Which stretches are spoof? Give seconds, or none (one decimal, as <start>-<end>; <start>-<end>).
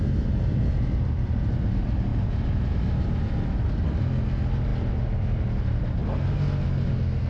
none